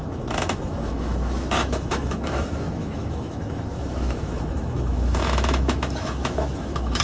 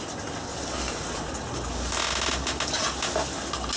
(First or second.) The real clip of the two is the second